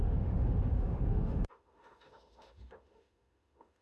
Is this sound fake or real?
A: fake